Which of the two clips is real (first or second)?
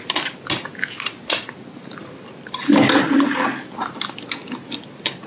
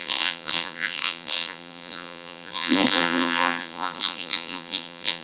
first